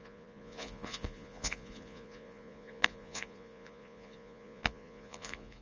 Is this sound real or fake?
fake